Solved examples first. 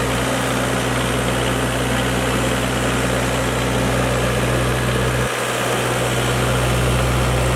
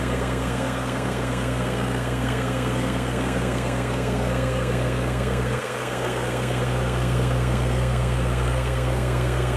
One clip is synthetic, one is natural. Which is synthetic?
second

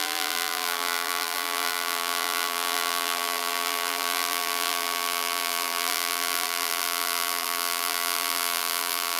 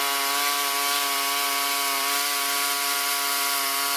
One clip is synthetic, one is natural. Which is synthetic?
first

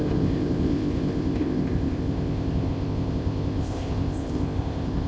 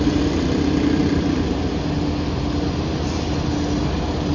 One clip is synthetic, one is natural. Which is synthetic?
first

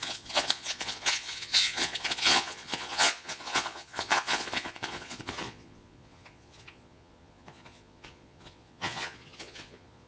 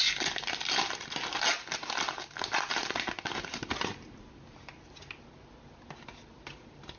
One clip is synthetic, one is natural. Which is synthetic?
first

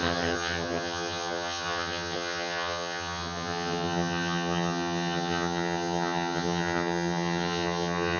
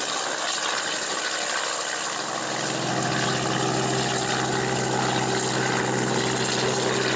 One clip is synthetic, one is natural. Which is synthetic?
first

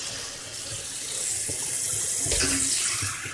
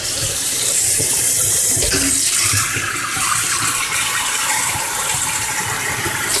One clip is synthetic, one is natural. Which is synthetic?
second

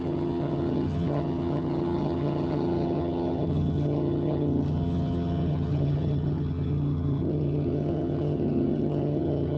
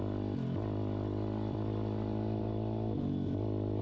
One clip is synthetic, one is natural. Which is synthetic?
first